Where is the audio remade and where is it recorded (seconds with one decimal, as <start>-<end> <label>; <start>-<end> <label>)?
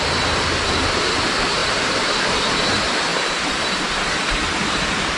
0.0-5.2 recorded